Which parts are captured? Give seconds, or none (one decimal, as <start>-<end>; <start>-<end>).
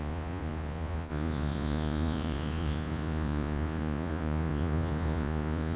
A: none